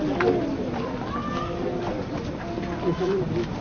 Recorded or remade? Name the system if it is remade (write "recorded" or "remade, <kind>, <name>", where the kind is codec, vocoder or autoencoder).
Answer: recorded